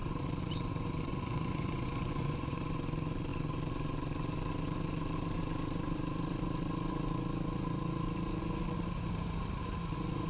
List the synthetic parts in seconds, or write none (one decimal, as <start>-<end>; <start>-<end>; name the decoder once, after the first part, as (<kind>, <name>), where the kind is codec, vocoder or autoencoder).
1.1-2.6 (vocoder, Vocos)